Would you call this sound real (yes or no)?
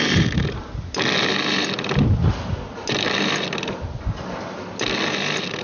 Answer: yes